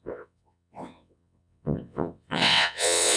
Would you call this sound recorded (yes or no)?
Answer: no